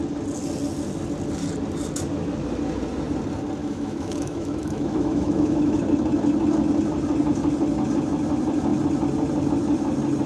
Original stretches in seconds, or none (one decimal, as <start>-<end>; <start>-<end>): 0.0-3.6; 5.8-10.3